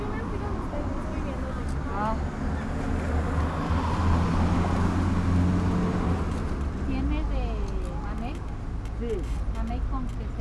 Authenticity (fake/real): real